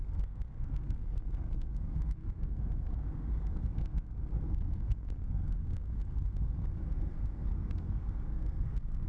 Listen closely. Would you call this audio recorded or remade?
remade